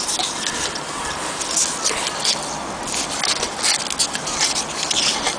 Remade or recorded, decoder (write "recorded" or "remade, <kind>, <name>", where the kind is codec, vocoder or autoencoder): recorded